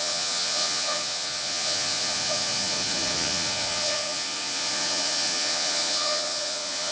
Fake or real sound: fake